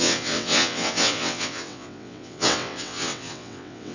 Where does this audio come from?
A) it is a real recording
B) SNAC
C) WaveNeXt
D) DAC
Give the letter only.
C